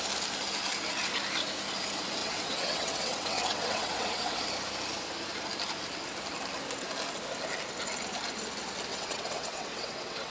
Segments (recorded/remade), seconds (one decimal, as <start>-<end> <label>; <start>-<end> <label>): 0.0-2.2 recorded; 2.2-4.4 remade; 4.4-8.9 recorded; 8.9-10.3 remade